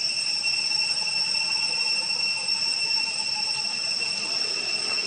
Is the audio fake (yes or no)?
no